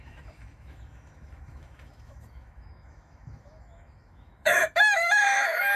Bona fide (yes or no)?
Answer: no